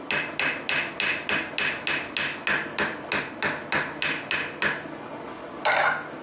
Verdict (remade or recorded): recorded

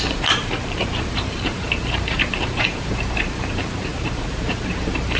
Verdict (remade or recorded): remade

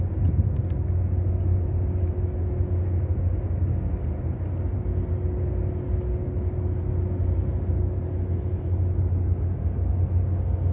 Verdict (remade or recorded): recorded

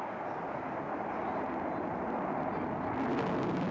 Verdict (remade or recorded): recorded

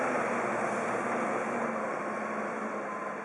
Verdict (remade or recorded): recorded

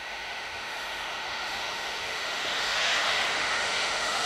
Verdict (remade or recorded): remade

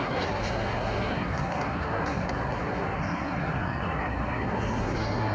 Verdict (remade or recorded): remade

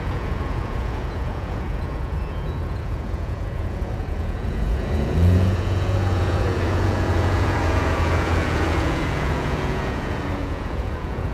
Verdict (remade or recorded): remade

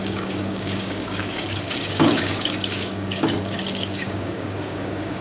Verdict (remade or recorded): remade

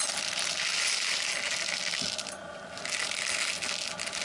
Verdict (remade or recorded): recorded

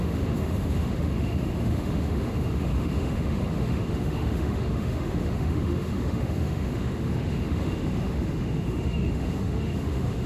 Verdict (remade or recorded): remade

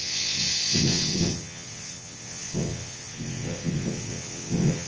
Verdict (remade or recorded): remade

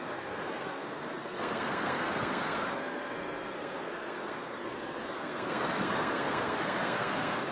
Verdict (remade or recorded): remade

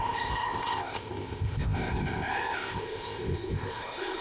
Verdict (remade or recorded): remade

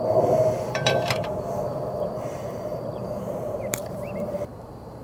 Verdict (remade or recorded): remade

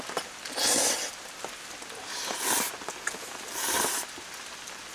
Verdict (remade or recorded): recorded